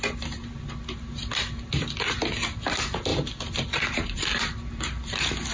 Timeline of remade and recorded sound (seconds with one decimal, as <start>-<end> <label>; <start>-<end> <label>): 0.0-3.1 recorded; 3.1-5.1 remade; 5.1-5.5 recorded